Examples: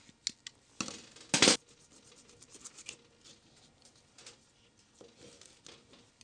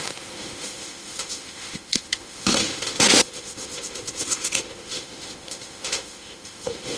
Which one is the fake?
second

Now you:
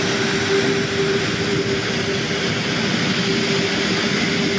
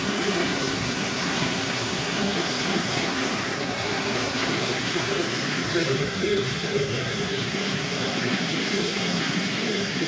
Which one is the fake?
second